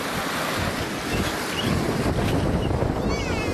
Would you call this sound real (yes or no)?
yes